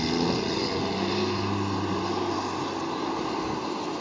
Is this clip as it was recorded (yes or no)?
yes